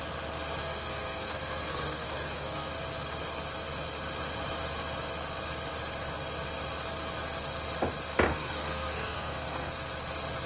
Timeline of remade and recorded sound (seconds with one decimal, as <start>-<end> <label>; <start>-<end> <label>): 0.0-0.6 recorded; 0.6-2.7 remade; 2.7-8.3 recorded; 8.3-9.7 remade; 9.7-10.5 recorded